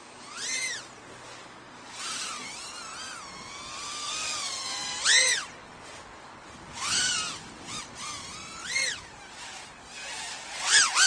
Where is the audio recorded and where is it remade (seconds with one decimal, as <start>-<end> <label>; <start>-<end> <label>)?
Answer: 0.0-11.1 recorded